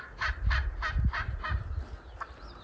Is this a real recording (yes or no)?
yes